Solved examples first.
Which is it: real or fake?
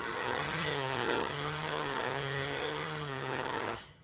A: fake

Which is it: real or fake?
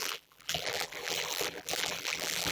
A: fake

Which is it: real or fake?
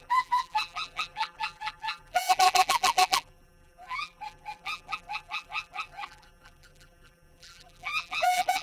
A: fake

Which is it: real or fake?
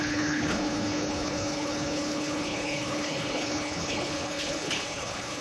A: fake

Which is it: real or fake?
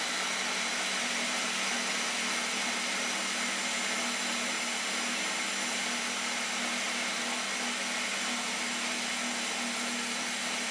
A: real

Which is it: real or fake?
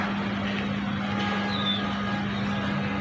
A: real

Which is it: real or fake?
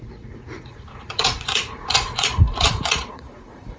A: fake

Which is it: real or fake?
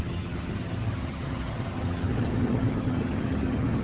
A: fake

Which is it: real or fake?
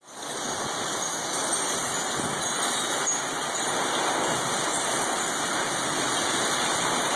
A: real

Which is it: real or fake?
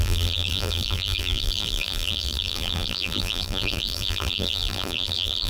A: fake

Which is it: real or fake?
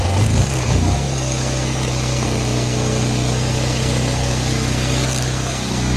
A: fake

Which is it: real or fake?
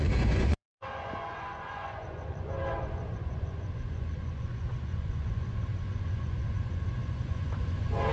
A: fake